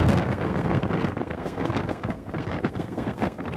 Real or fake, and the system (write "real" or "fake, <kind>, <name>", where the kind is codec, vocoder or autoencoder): fake, codec, SNAC